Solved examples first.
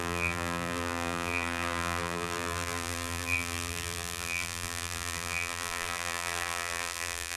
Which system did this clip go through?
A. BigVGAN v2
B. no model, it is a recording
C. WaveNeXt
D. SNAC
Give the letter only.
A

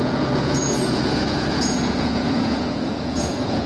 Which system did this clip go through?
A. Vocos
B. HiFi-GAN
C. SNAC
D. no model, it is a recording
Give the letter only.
A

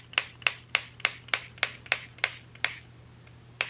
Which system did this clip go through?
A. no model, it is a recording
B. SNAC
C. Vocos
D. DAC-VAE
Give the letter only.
A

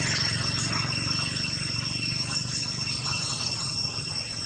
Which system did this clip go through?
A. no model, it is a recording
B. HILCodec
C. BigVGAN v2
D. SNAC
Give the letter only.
A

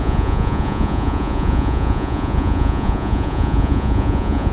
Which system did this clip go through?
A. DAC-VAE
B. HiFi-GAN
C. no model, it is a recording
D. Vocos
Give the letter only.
D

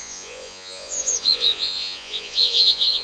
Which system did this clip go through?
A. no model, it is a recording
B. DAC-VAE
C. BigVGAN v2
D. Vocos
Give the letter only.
D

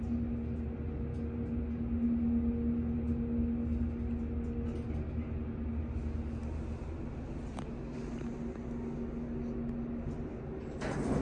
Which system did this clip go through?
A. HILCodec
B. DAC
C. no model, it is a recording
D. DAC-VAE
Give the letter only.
C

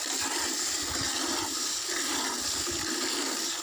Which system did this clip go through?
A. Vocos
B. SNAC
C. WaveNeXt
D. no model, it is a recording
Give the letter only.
D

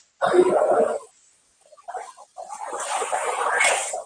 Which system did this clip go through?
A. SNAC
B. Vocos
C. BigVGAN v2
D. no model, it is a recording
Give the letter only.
D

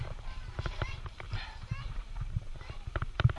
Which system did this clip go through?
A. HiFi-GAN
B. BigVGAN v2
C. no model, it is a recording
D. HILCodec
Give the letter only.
B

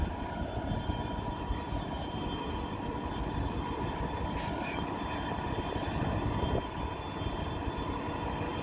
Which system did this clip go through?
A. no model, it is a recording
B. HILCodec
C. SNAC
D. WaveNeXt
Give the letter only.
A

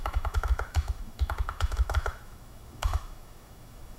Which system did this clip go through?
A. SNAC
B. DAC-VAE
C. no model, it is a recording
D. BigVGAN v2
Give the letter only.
B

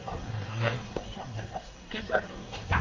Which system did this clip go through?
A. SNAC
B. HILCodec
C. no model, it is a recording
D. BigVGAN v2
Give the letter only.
A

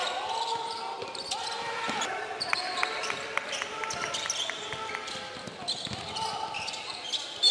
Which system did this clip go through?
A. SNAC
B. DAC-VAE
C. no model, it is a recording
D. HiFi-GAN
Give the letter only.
C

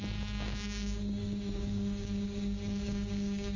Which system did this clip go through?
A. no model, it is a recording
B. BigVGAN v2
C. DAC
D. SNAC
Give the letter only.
C